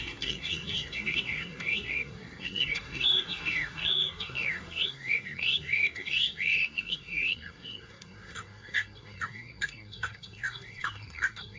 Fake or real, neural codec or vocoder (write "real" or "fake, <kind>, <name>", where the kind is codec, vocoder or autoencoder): fake, codec, SNAC